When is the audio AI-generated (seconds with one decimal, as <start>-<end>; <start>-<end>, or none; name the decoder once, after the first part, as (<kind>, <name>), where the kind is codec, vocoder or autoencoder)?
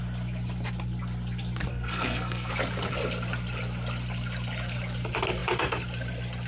1.7-2.5 (codec, SNAC)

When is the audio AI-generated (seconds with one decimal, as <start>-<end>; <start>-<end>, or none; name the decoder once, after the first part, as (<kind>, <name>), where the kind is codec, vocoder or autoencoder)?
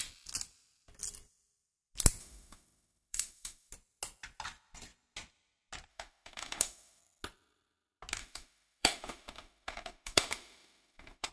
2.2-3.7 (autoencoder, DAC-VAE); 5.9-7.0; 8.2-11.3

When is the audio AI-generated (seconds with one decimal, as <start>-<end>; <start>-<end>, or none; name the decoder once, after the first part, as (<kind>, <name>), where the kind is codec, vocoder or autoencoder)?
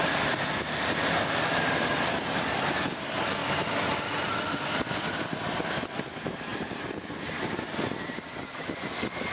3.4-4.0 (vocoder, BigVGAN v2); 6.5-7.3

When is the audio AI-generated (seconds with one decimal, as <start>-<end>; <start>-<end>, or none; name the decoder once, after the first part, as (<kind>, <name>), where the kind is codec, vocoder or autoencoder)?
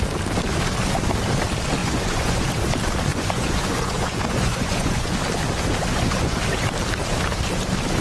1.8-2.5 (vocoder, Vocos); 3.1-5.1; 5.9-6.4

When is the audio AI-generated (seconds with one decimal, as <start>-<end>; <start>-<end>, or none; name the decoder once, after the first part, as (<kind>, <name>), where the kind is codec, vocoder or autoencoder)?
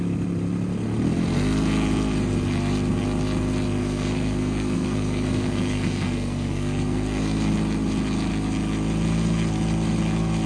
3.8-7.5 (codec, SNAC)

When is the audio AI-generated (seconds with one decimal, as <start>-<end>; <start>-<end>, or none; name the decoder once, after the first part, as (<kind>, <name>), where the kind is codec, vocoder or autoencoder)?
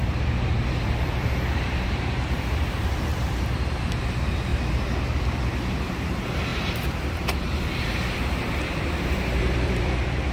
0.0-4.5 (vocoder, BigVGAN v2); 5.7-10.3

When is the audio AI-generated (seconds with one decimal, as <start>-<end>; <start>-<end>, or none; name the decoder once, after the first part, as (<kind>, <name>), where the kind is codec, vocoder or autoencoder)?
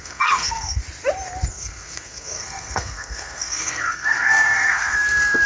0.0-0.8 (codec, SNAC); 1.5-5.5